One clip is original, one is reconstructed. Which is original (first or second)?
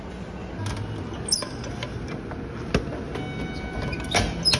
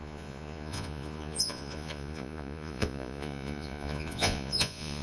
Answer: first